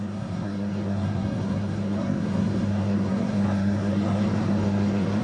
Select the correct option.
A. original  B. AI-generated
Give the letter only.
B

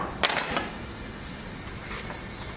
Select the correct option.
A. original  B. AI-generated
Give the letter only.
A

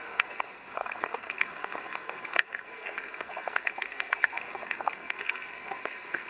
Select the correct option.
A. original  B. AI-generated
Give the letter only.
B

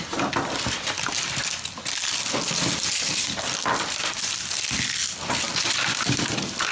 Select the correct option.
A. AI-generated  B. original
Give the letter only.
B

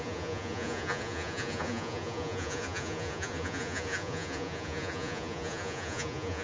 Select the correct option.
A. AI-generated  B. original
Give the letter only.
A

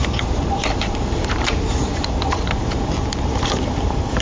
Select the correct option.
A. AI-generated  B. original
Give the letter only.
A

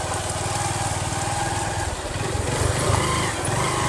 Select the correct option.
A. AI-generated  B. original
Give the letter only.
B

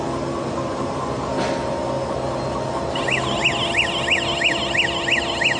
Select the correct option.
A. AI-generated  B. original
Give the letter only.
B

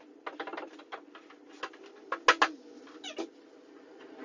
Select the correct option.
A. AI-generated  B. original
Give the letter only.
B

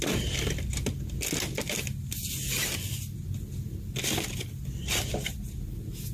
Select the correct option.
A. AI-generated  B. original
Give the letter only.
B